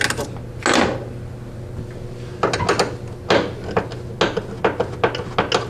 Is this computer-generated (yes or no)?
no